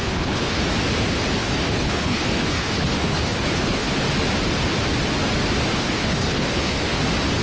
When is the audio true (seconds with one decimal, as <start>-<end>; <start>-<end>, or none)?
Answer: 0.6-1.4; 3.9-5.7; 7.0-7.4